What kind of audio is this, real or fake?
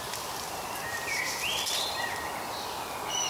fake